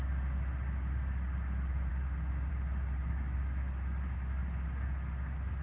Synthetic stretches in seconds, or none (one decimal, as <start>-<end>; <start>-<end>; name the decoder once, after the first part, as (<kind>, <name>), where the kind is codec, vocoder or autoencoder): none